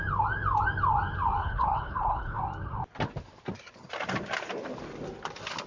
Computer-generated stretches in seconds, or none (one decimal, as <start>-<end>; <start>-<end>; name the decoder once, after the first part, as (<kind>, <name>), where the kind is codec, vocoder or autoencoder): 1.4-2.4 (codec, HILCodec)